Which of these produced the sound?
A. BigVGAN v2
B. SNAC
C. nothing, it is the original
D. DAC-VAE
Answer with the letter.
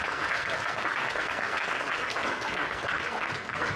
B